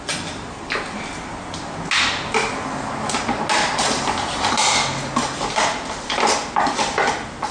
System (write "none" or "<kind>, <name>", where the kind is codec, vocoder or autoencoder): none